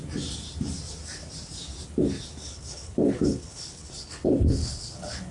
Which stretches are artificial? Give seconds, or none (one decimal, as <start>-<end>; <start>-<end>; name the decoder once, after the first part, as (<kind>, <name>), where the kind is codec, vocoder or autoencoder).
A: 2.4-5.3 (codec, HILCodec)